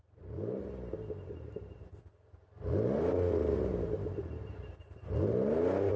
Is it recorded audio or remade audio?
recorded